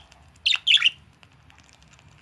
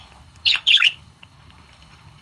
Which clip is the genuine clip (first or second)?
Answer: first